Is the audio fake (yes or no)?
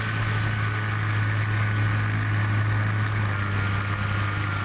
no